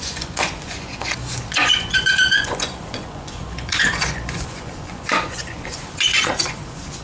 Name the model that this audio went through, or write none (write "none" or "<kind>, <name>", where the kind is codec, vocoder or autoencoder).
vocoder, Vocos